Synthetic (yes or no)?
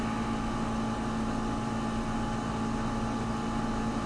no